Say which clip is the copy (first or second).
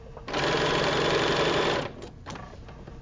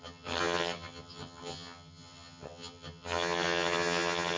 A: second